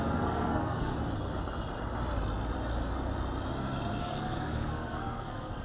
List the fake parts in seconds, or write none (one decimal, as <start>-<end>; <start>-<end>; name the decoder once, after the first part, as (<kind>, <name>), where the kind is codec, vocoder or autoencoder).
0.0-0.9 (codec, SNAC); 4.0-5.6